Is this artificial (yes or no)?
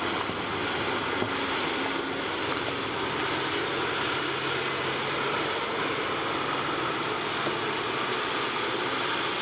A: no